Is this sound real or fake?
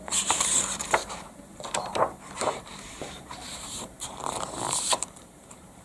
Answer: fake